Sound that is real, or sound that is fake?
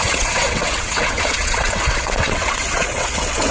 fake